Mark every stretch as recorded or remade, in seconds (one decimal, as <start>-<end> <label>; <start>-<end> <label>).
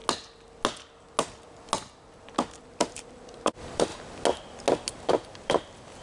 0.0-2.6 recorded; 2.6-3.9 remade; 3.9-5.1 recorded; 5.1-6.0 remade